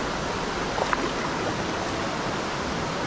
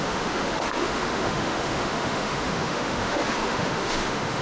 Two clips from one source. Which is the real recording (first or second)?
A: first